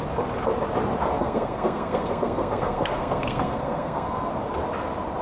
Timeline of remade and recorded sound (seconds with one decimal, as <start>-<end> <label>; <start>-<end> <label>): 0.0-1.2 recorded; 1.2-4.3 remade; 4.3-5.2 recorded